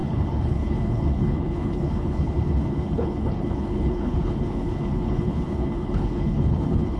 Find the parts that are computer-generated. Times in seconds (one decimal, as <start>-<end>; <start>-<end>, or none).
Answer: 0.0-7.0